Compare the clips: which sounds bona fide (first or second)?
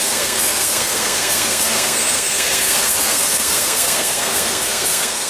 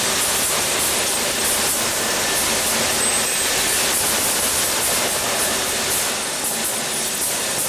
second